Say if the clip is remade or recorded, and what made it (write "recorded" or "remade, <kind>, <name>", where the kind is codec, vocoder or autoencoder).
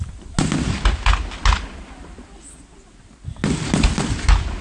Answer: recorded